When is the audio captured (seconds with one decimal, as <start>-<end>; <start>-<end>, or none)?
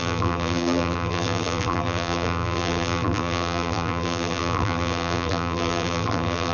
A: none